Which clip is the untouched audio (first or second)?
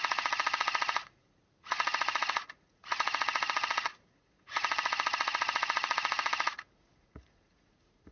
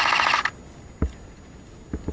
second